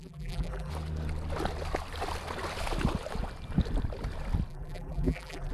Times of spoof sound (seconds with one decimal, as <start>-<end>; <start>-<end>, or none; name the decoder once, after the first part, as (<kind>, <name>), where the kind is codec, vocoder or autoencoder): 0.0-0.7 (vocoder, BigVGAN v2); 4.5-5.5